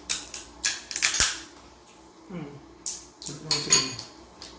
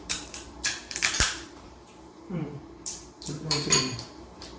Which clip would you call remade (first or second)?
second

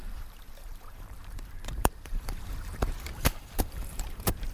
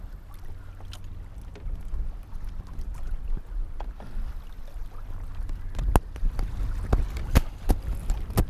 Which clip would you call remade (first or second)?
first